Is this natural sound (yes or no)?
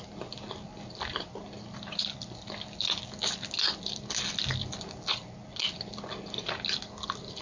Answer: yes